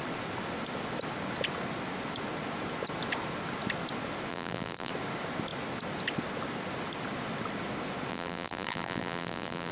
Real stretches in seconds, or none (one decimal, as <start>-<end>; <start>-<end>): 0.0-4.3; 4.9-8.1